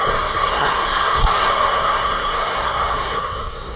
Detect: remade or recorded remade